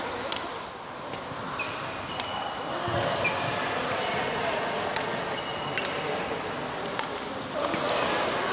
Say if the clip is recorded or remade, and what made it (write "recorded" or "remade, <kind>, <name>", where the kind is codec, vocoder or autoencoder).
recorded